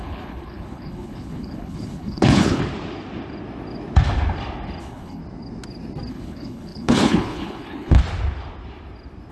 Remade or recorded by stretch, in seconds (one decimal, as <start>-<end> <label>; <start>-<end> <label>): 0.0-2.6 remade; 2.6-4.8 recorded; 4.8-5.2 remade; 5.2-6.1 recorded; 6.1-8.0 remade; 8.0-9.3 recorded